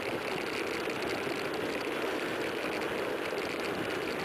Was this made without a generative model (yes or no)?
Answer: yes